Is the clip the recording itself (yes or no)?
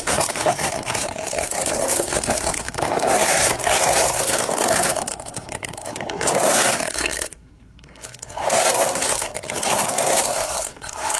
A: no